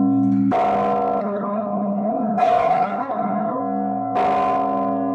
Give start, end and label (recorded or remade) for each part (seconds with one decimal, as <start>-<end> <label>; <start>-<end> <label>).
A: 0.0-1.2 recorded; 1.2-3.6 remade; 3.6-5.1 recorded

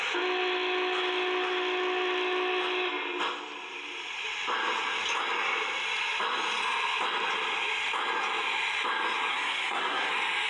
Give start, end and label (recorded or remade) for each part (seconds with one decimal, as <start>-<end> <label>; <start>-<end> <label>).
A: 0.0-9.3 recorded; 9.3-10.1 remade; 10.1-10.5 recorded

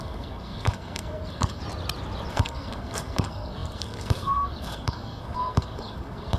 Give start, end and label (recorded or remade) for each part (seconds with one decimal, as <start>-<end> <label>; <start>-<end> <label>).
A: 0.0-1.6 remade; 1.6-2.3 recorded; 2.3-6.4 remade

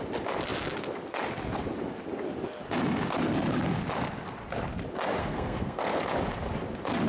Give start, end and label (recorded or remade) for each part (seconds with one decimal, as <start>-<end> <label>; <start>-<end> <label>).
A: 0.0-5.2 recorded; 5.2-6.0 remade; 6.0-7.1 recorded

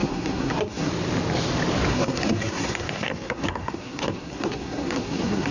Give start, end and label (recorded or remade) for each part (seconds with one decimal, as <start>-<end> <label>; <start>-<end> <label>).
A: 0.0-0.9 remade; 0.9-1.9 recorded; 1.9-5.5 remade

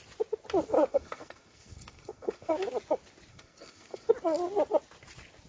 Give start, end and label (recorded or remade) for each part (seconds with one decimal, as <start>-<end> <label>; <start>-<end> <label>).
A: 0.0-0.9 recorded; 0.9-2.5 remade; 2.5-3.3 recorded; 3.3-4.1 remade; 4.1-5.5 recorded